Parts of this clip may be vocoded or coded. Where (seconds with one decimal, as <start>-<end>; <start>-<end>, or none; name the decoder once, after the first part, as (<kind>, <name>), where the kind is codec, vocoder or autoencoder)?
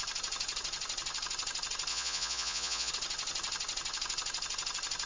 1.9-2.9 (vocoder, Vocos)